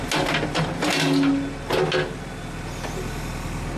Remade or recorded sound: recorded